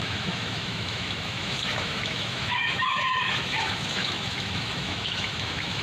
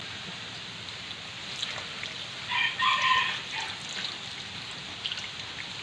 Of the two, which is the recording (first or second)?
second